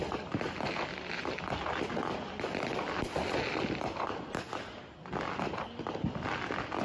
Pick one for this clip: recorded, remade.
recorded